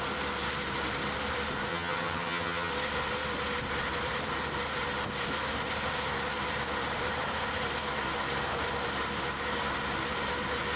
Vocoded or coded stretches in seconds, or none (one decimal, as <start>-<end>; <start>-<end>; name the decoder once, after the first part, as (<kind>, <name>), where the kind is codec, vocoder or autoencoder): 1.7-2.7 (vocoder, HiFi-GAN)